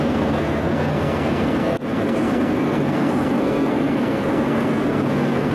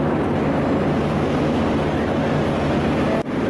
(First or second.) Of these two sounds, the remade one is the first